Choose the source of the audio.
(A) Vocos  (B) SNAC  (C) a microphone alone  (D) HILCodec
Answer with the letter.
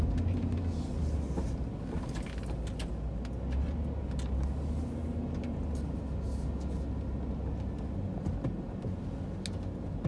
C